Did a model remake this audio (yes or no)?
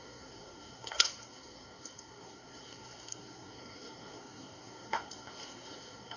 yes